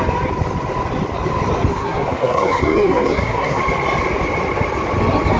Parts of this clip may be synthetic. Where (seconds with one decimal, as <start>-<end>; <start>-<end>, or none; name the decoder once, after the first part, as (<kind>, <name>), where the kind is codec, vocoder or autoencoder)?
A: 1.7-3.6 (codec, SNAC)